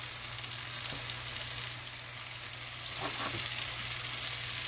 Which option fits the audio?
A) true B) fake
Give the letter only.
A